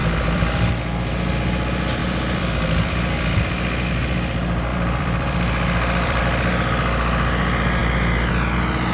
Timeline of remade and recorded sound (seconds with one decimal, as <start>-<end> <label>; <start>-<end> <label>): 0.0-0.7 remade; 0.7-2.0 recorded; 2.0-3.9 remade; 3.9-4.7 recorded; 4.7-6.2 remade; 6.2-8.9 recorded